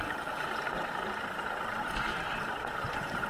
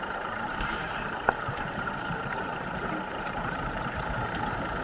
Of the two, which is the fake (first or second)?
second